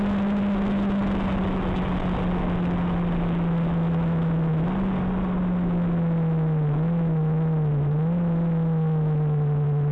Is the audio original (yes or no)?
yes